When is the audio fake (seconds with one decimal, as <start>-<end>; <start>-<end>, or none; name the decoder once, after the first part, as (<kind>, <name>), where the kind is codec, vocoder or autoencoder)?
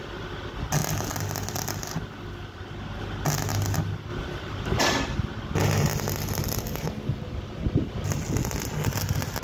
none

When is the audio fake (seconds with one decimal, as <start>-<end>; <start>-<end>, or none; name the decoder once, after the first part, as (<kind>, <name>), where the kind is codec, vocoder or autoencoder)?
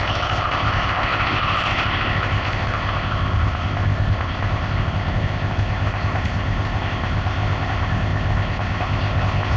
0.0-9.6 (codec, ZipCodec)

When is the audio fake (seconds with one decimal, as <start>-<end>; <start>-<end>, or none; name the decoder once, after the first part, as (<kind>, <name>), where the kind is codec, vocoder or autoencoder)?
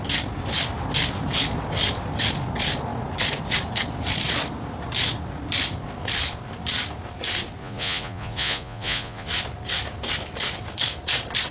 7.6-9.3 (vocoder, Vocos)